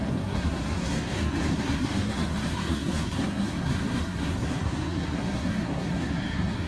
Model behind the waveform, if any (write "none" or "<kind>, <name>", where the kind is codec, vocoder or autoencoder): codec, SNAC